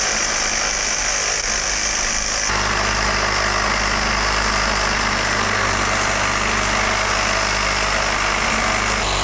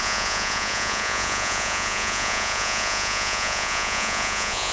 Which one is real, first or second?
first